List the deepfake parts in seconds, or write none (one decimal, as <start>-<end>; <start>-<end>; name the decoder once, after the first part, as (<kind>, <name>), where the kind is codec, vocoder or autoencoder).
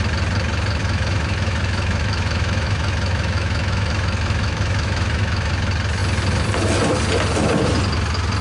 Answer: 0.8-5.5 (autoencoder, DAC-VAE)